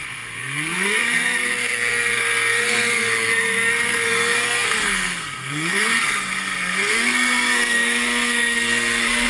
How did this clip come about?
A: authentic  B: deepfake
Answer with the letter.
B